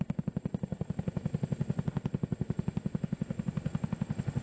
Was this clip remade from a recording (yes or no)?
no